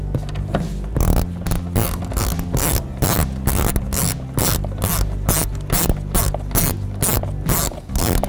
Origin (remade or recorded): recorded